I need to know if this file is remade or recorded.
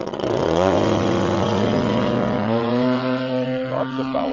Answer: remade